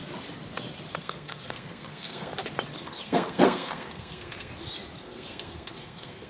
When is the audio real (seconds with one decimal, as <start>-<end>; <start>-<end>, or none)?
0.0-1.0; 2.3-2.8; 4.5-5.0